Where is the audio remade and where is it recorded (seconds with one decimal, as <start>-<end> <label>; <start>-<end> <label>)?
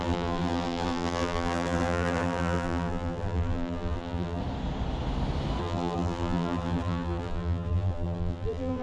0.0-4.4 remade; 4.4-5.6 recorded; 5.6-8.8 remade